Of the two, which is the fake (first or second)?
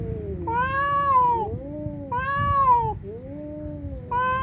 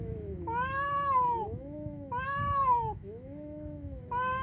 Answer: second